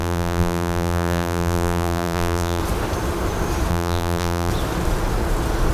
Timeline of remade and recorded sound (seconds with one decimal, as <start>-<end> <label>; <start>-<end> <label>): 0.0-2.6 remade; 2.6-3.7 recorded; 3.7-4.5 remade; 4.5-5.7 recorded